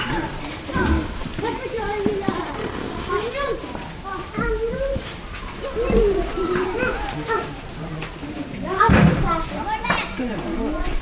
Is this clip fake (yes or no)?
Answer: yes